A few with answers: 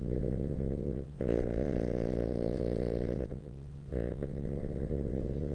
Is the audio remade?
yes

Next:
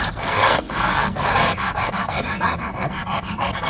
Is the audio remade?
yes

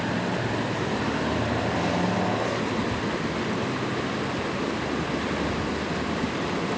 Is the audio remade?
no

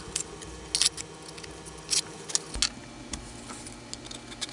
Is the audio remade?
no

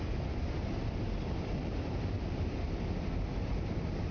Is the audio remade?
no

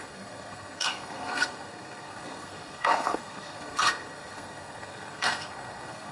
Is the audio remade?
yes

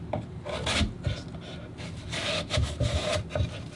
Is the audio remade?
no